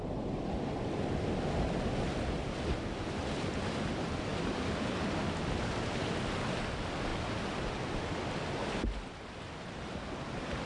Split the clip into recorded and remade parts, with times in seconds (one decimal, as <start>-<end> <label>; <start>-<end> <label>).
0.0-10.7 recorded